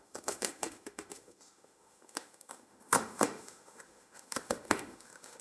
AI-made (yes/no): yes